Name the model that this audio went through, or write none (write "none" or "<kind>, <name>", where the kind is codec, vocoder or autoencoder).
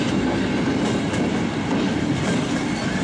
none